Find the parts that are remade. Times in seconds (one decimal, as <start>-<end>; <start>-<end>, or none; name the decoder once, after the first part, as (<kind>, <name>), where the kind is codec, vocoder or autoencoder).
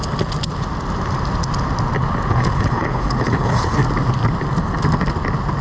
2.3-3.8 (codec, HILCodec)